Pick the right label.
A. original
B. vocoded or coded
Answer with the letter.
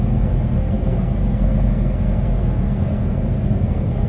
B